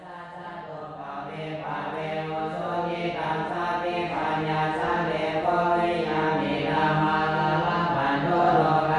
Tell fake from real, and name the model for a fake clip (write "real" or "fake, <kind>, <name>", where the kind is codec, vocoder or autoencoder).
real